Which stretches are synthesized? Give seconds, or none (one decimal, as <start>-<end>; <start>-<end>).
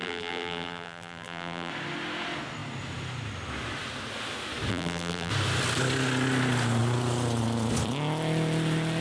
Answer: 0.0-1.7; 4.7-5.3